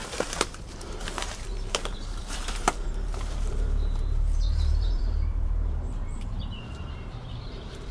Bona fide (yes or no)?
no